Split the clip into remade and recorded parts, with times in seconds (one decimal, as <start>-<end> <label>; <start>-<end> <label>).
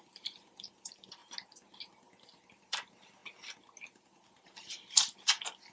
0.0-1.2 remade; 1.2-2.5 recorded; 2.5-3.2 remade; 3.2-3.8 recorded; 3.8-5.7 remade